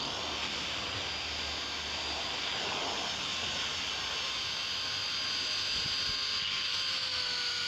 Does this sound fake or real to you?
real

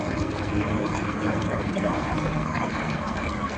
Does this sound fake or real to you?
fake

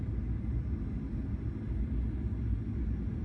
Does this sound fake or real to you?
real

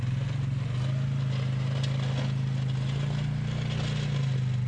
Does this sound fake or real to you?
real